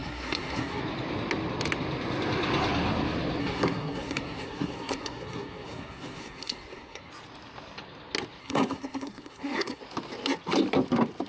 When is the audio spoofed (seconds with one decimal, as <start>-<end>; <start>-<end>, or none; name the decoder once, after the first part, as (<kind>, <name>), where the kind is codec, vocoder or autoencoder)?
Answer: 0.0-0.8 (codec, SNAC); 3.4-7.1; 8.4-9.8